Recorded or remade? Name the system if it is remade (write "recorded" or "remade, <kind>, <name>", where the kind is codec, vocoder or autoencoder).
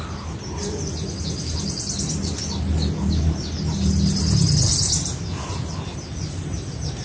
recorded